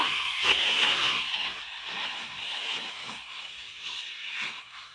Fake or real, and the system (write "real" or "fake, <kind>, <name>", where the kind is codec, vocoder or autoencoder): fake, codec, SNAC